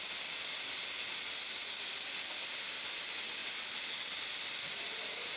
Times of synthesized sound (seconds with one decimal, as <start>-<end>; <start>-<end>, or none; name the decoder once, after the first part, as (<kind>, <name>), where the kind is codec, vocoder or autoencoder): none